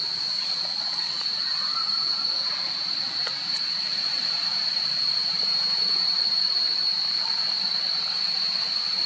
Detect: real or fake fake